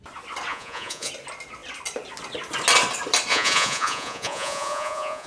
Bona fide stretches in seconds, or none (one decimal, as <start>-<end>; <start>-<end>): 0.0-0.5; 1.1-3.3